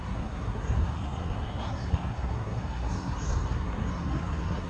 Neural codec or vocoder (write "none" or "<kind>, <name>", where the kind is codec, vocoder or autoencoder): codec, SNAC